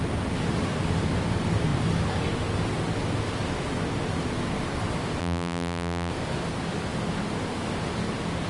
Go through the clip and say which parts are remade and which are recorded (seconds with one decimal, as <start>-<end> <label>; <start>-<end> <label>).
0.0-5.2 recorded; 5.2-6.1 remade; 6.1-8.5 recorded